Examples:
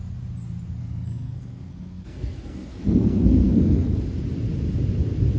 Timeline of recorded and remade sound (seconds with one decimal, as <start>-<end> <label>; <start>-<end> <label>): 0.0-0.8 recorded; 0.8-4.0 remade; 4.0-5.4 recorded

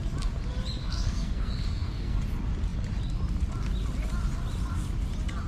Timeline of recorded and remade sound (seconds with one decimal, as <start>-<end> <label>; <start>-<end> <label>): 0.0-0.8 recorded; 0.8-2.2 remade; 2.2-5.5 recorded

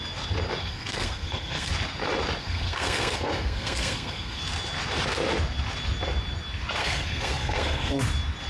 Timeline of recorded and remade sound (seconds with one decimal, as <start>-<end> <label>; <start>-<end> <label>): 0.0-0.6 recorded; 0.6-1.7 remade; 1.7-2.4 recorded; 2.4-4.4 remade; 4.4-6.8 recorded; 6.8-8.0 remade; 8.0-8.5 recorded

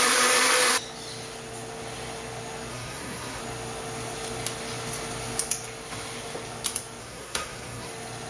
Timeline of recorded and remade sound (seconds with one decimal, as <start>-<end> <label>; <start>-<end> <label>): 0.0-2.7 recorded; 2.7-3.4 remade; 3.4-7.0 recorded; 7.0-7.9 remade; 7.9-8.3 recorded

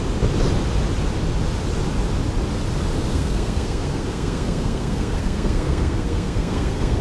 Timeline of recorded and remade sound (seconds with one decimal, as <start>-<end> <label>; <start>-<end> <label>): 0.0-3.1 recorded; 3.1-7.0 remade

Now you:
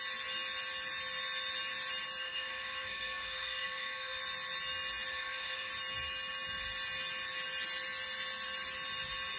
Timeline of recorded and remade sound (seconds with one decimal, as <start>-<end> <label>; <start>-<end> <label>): 0.0-2.2 recorded; 2.2-4.2 remade; 4.2-5.1 recorded; 5.1-5.7 remade; 5.7-9.4 recorded